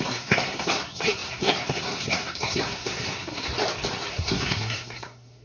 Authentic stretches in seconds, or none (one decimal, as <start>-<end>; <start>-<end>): 3.5-4.1